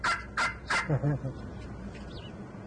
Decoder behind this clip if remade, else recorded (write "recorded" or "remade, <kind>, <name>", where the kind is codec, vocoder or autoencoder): recorded